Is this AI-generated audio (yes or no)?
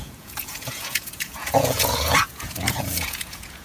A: yes